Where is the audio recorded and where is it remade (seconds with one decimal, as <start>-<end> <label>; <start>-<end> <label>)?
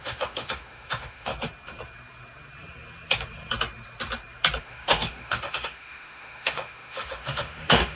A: 0.0-1.3 remade; 1.3-4.6 recorded; 4.6-8.0 remade